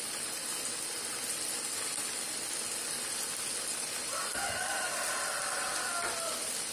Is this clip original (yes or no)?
yes